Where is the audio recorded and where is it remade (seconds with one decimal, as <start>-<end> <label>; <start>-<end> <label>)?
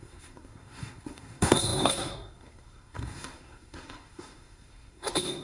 0.0-5.4 remade